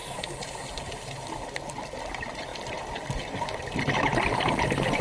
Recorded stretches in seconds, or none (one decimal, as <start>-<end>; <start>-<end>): 0.0-5.0